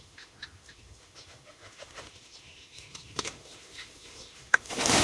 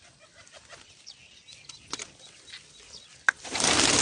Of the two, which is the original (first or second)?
second